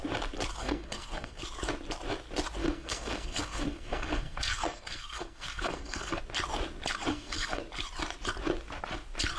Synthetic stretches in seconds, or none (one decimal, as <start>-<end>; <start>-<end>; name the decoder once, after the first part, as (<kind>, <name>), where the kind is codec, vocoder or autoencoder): 0.6-1.4 (codec, SNAC); 2.6-6.2; 7.1-7.6